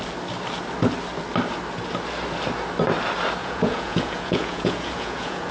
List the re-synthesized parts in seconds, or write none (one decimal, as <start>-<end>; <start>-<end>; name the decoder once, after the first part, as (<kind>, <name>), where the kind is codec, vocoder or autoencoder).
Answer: 3.4-5.5 (vocoder, Vocos)